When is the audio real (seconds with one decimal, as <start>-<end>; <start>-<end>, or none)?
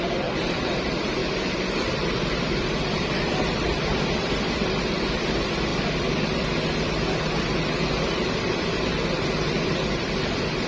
none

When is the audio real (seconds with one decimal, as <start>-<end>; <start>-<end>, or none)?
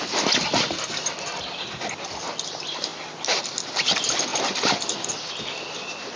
0.0-4.3; 5.1-6.2